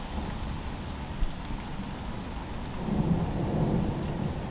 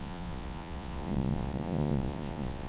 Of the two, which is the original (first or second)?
first